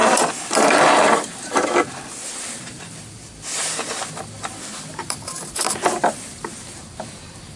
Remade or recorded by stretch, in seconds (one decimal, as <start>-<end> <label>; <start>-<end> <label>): 0.0-4.6 remade; 4.6-5.4 recorded; 5.4-6.8 remade; 6.8-7.6 recorded